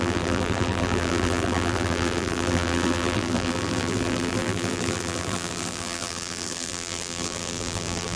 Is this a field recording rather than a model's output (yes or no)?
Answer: no